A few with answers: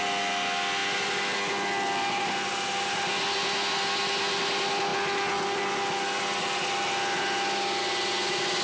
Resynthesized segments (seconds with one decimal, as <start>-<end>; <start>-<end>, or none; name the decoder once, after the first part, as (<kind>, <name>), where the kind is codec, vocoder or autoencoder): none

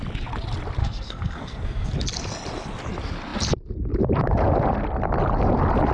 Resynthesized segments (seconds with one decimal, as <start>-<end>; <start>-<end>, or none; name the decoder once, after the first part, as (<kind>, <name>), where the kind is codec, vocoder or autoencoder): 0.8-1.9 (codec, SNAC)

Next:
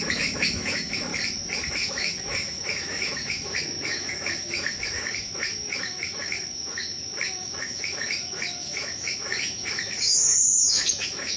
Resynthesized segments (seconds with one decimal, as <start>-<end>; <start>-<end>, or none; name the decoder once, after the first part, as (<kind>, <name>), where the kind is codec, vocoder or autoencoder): 0.0-1.1 (autoencoder, DAC-VAE); 1.7-11.4